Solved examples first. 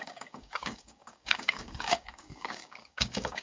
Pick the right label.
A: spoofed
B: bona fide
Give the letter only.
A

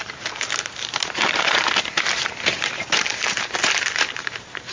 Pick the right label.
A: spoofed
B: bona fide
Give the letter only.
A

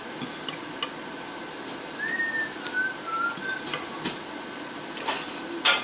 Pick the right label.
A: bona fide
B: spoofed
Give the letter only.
A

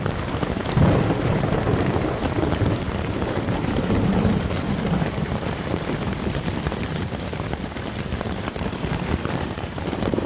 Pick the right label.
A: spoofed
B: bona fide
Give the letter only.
A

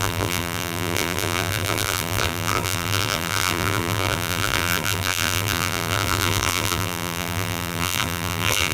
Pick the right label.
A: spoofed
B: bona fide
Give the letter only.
A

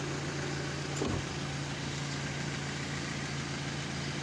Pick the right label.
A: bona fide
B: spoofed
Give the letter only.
A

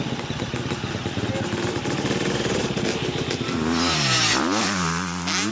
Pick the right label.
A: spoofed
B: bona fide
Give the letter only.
B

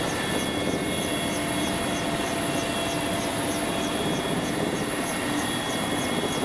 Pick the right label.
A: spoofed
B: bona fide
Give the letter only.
B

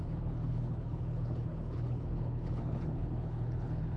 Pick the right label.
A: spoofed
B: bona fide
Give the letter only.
A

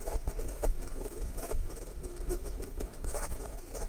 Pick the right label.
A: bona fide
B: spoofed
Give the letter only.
B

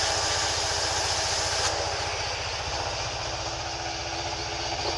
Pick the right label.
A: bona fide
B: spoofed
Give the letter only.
A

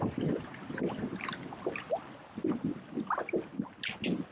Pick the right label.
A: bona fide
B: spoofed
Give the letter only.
A